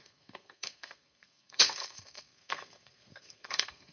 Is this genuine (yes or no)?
no